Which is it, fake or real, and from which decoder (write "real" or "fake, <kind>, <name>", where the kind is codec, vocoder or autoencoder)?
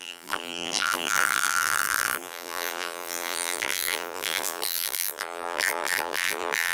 fake, vocoder, BigVGAN v2